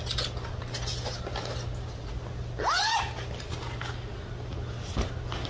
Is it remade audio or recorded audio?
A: recorded